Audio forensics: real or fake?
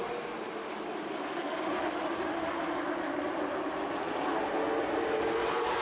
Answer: real